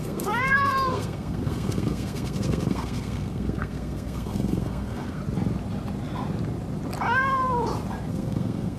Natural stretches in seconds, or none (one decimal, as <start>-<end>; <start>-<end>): 5.2-8.1

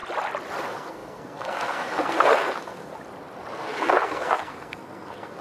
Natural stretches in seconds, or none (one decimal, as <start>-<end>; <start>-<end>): 0.0-0.6; 2.9-3.5

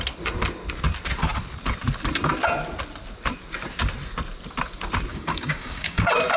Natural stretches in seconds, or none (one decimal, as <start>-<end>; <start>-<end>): 0.0-5.1; 6.0-6.4

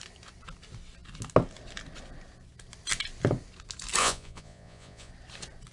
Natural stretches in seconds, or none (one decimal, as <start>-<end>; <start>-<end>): 0.0-4.0; 5.1-5.7

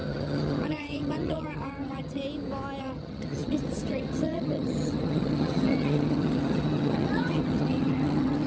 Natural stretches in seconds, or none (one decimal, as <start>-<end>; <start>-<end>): 2.2-2.8

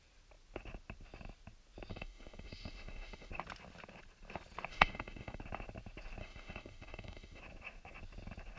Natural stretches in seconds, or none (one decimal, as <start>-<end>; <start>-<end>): 0.0-1.9; 3.3-4.7; 5.4-6.2; 7.4-8.6